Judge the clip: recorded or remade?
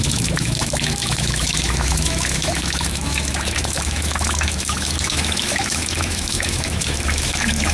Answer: remade